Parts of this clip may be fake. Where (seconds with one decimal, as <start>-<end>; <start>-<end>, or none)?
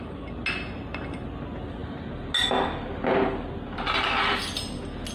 none